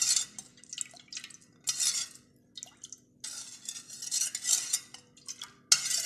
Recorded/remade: recorded